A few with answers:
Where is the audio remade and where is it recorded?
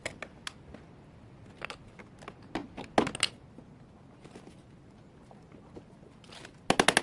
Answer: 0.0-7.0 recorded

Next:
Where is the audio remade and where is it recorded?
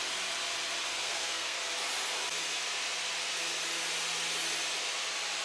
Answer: 0.0-0.9 recorded; 0.9-1.6 remade; 1.6-5.4 recorded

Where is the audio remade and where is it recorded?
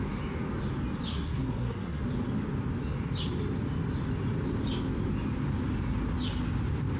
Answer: 0.0-1.1 recorded; 1.1-2.0 remade; 2.0-7.0 recorded